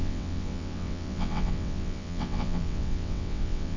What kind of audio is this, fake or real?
fake